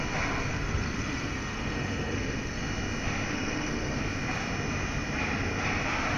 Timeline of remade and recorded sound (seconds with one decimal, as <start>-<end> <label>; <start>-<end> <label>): 0.0-0.5 recorded; 0.5-2.6 remade; 2.6-3.3 recorded; 3.3-4.0 remade; 4.0-6.2 recorded